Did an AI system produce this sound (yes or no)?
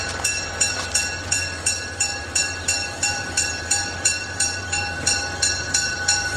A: yes